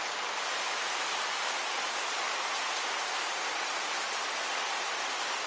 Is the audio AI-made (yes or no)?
no